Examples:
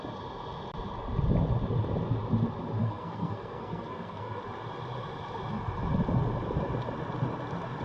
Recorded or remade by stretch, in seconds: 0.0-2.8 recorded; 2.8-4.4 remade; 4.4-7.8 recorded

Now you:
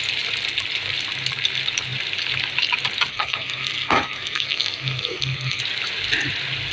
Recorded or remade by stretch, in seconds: 0.0-3.1 recorded; 3.1-5.6 remade; 5.6-6.7 recorded

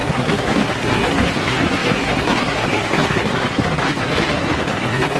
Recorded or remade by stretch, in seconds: 0.0-5.2 remade

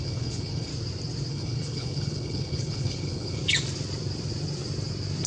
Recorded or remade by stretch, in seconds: 0.0-0.7 remade; 0.7-1.3 recorded; 1.3-3.4 remade; 3.4-5.3 recorded

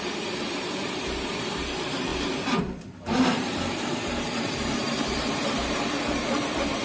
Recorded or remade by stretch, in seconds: 0.0-6.8 remade